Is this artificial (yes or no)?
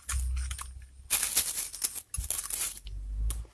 no